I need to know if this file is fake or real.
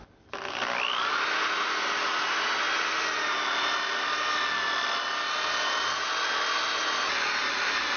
real